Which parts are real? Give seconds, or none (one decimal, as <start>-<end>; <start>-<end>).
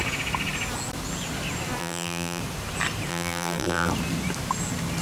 0.0-1.8; 2.4-3.1; 3.9-5.0